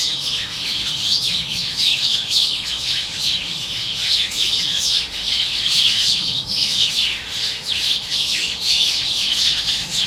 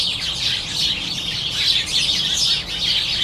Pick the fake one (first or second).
first